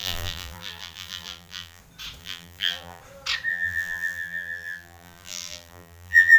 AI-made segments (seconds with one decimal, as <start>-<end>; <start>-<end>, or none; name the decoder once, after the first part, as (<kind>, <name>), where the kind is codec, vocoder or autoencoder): 0.0-1.8 (vocoder, BigVGAN v2); 2.2-3.0; 3.5-6.4